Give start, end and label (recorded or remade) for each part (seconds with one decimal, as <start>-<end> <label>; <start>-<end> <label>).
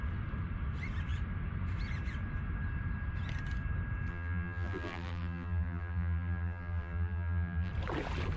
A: 0.0-4.1 recorded; 4.1-7.7 remade; 7.7-8.4 recorded